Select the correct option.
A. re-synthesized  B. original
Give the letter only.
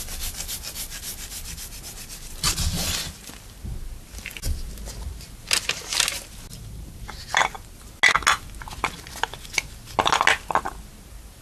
B